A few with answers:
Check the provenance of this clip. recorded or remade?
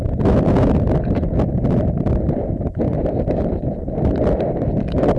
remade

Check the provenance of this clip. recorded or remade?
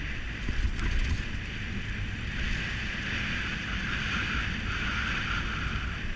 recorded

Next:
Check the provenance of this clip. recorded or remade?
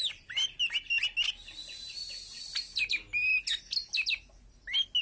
recorded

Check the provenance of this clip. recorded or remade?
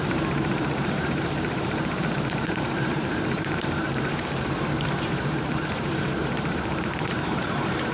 remade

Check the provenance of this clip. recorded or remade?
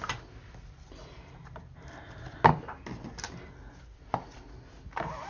recorded